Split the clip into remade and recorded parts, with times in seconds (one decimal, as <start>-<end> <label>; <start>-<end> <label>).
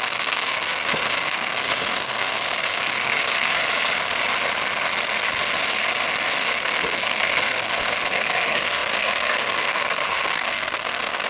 0.0-3.6 remade; 3.6-6.4 recorded; 6.4-11.3 remade